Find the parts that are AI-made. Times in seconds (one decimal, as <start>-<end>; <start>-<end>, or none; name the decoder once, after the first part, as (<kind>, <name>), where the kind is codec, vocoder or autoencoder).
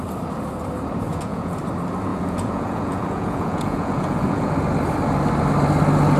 1.1-1.6 (vocoder, Vocos); 2.1-4.5